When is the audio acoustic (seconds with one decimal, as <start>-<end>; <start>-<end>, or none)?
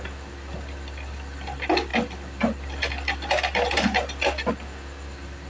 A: 0.0-5.5